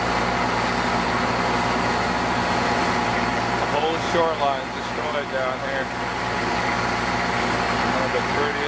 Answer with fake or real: real